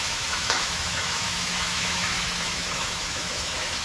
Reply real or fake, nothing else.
fake